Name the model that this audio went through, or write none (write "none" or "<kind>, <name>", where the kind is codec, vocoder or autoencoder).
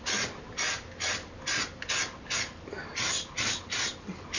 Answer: none